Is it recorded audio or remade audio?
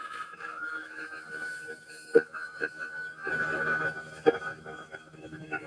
remade